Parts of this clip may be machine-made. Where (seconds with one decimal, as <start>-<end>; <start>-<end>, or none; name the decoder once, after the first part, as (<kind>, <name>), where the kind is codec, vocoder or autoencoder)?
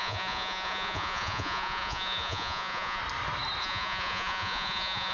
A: 0.0-3.0 (vocoder, Vocos); 3.6-5.1